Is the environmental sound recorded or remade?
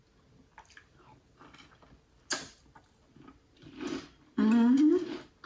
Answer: recorded